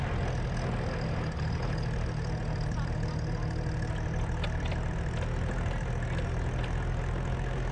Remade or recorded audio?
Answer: recorded